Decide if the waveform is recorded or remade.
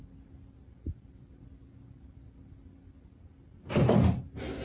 recorded